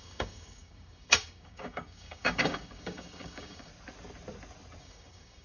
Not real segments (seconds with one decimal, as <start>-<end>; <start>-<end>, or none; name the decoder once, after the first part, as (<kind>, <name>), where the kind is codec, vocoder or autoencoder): 0.0-3.7 (codec, DAC); 4.8-5.4